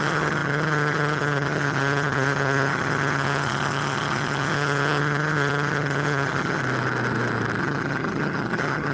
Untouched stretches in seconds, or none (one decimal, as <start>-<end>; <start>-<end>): 6.6-7.6